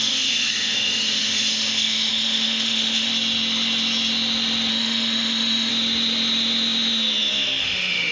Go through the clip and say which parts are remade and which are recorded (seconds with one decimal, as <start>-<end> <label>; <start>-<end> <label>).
0.0-3.1 remade; 3.1-4.7 recorded; 4.7-5.7 remade; 5.7-7.6 recorded; 7.6-8.1 remade